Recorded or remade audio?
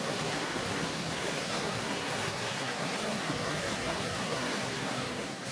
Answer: remade